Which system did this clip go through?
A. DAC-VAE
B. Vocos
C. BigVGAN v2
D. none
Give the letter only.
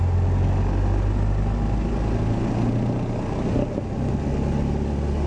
D